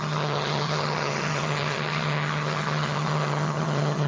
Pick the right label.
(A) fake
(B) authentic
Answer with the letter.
A